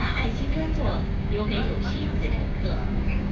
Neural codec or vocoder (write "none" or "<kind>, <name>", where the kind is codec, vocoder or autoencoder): codec, DAC